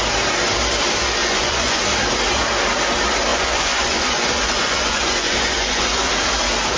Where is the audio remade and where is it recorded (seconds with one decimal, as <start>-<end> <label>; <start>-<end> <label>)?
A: 0.0-1.2 recorded; 1.2-1.8 remade; 1.8-3.3 recorded; 3.3-6.1 remade; 6.1-6.8 recorded